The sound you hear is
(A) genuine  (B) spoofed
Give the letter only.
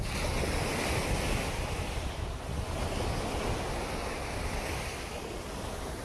A